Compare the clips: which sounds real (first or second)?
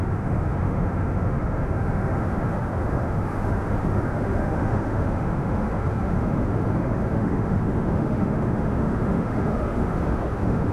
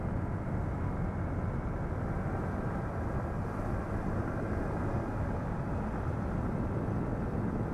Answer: second